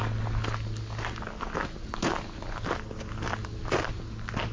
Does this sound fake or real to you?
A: real